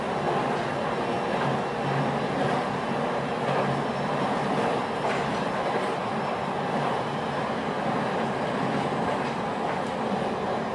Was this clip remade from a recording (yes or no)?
no